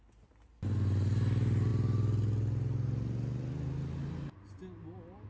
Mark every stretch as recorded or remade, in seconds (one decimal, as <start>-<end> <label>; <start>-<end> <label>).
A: 0.0-5.3 recorded